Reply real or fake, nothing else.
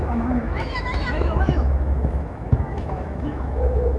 fake